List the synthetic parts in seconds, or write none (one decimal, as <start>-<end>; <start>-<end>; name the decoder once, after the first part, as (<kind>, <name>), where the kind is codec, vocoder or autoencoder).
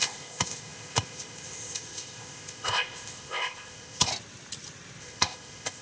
0.0-4.1 (codec, ZipCodec); 5.0-5.8